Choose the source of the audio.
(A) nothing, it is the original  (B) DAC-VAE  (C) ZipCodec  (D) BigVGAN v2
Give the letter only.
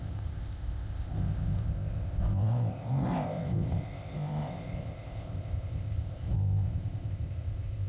C